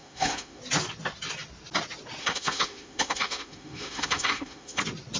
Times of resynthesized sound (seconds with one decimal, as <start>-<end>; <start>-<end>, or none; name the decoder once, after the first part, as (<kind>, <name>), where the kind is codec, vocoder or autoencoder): 0.0-0.6 (autoencoder, DAC-VAE); 2.2-4.8